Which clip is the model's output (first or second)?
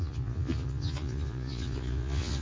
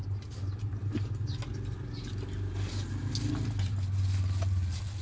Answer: first